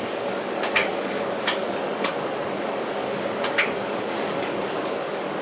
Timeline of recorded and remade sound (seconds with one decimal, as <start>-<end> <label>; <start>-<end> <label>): 0.0-5.4 remade